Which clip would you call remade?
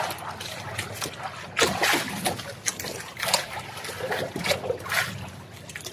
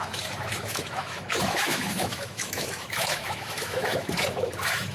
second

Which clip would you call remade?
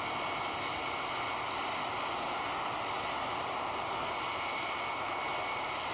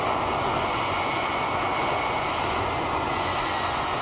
second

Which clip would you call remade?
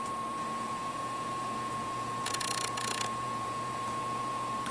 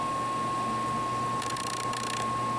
first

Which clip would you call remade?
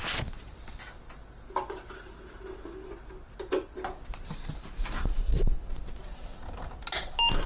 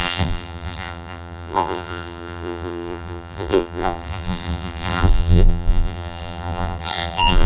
second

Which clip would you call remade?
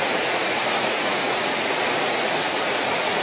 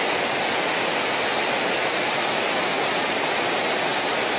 first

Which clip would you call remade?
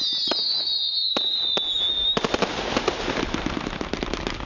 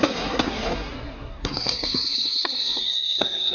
second